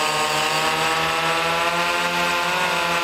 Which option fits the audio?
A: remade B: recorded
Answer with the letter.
B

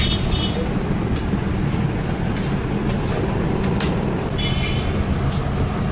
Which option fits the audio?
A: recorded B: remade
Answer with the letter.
A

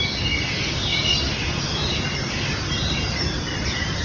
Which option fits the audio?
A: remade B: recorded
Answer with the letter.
B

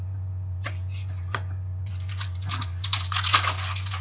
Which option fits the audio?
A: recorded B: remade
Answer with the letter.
B